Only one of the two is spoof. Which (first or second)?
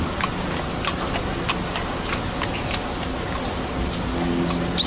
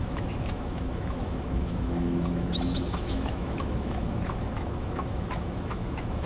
second